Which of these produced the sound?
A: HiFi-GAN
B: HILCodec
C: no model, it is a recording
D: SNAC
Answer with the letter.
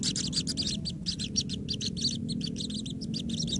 C